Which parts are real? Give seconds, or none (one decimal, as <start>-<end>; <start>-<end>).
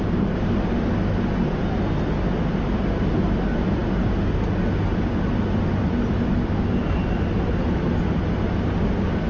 0.0-9.3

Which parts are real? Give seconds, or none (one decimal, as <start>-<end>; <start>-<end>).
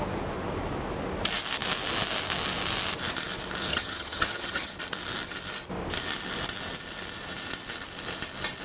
0.0-3.7; 4.8-8.6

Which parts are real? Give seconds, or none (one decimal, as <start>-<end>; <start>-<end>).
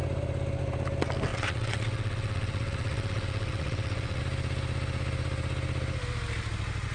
0.0-1.3; 4.2-6.9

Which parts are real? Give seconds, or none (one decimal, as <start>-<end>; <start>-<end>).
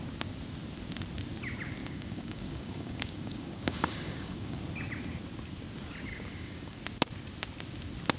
0.0-1.8; 4.6-6.1; 6.8-8.2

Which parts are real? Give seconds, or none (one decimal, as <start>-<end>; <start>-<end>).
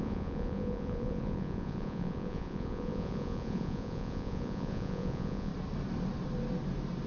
5.5-7.1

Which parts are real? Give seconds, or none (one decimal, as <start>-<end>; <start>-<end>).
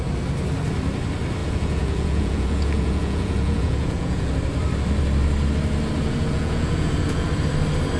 0.0-1.4; 4.3-6.0; 7.3-8.0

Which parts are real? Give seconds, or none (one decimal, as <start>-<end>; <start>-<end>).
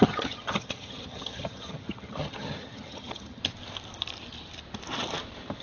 3.4-5.6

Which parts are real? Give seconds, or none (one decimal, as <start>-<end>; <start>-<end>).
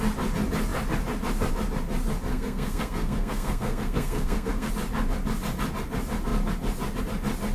0.0-2.3; 4.7-7.5